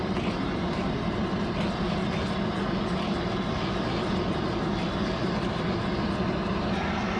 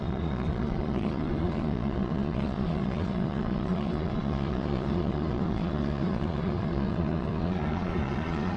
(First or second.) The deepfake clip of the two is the second